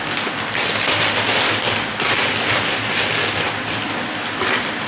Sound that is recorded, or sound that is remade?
recorded